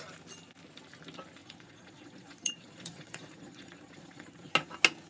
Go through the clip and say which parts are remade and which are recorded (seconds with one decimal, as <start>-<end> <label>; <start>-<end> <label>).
0.0-1.4 recorded; 1.4-4.5 remade; 4.5-5.1 recorded